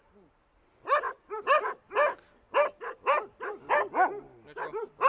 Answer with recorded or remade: recorded